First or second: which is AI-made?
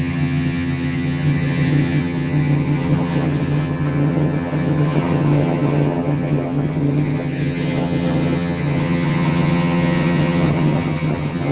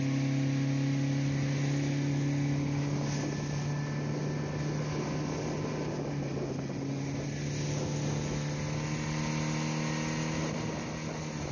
first